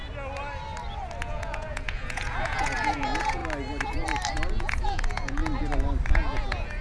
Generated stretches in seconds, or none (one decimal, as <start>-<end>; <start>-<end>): 1.2-3.4; 4.5-5.4; 6.1-6.8